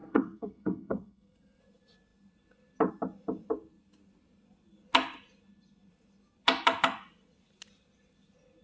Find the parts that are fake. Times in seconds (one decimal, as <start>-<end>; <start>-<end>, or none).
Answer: 0.0-1.6